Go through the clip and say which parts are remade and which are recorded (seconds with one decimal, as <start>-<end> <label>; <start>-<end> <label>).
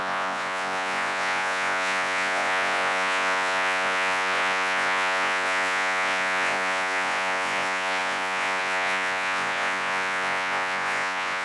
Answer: 0.0-11.4 remade